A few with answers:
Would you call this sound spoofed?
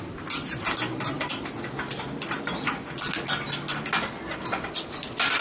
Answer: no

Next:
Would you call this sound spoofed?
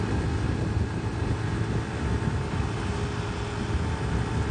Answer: no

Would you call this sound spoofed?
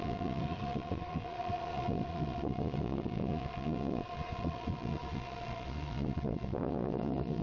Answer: yes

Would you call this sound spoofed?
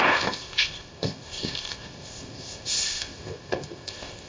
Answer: yes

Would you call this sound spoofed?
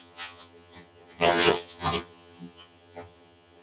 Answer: yes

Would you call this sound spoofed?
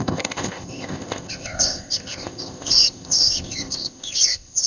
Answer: yes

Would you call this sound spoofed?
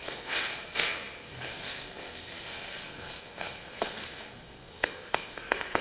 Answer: yes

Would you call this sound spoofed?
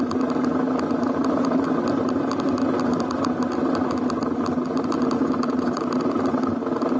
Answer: no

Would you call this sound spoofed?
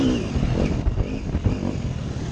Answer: no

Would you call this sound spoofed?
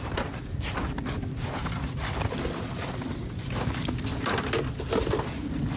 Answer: no